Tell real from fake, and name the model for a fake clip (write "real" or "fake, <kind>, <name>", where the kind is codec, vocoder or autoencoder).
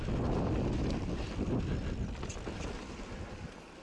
real